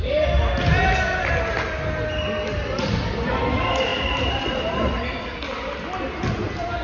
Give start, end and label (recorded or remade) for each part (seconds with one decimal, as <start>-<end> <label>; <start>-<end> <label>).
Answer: 0.0-6.8 recorded